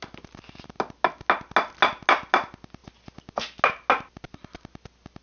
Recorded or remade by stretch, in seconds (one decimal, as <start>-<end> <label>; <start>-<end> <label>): 0.0-5.2 recorded